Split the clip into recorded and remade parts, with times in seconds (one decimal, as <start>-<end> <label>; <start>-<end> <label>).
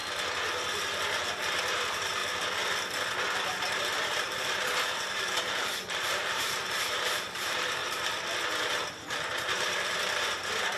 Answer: 0.0-1.4 recorded; 1.4-2.2 remade; 2.2-3.5 recorded; 3.5-7.8 remade; 7.8-8.9 recorded; 8.9-10.8 remade